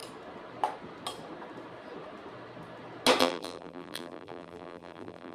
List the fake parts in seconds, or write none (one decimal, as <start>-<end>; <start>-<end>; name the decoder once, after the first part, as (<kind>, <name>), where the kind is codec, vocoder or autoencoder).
3.2-5.3 (vocoder, BigVGAN v2)